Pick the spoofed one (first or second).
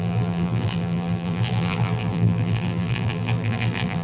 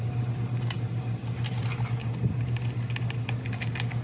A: first